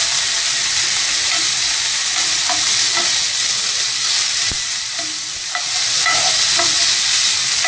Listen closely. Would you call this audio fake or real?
real